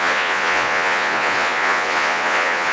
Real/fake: fake